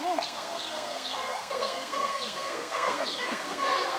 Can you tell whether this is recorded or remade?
remade